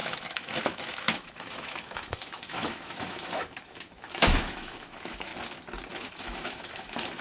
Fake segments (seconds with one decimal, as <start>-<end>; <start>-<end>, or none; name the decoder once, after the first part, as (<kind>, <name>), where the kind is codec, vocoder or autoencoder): 0.0-5.3 (autoencoder, DAC-VAE); 5.9-7.2